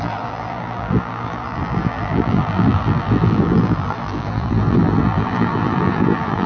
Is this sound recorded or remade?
remade